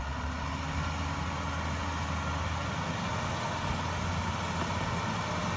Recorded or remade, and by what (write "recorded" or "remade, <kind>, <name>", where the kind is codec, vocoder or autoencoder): recorded